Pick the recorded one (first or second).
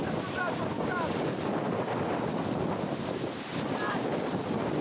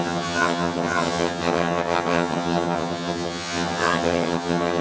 first